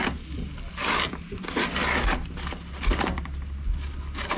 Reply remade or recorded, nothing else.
recorded